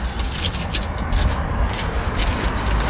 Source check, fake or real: real